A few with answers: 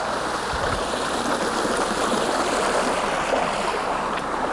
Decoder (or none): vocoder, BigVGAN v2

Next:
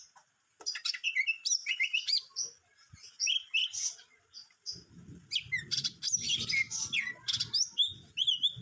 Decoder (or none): none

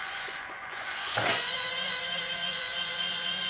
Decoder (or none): vocoder, Vocos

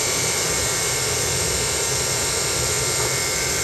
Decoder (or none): none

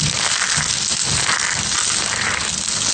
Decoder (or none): none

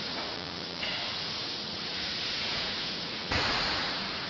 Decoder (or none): vocoder, Vocos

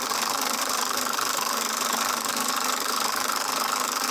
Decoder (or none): codec, SNAC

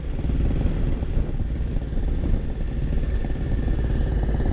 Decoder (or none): none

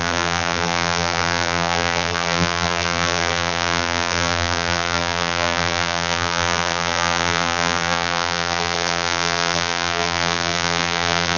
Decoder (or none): vocoder, BigVGAN v2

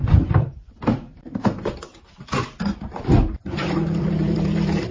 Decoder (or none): vocoder, BigVGAN v2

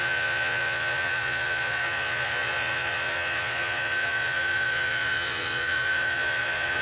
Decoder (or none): vocoder, Vocos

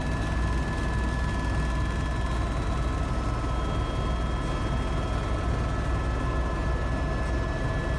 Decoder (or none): none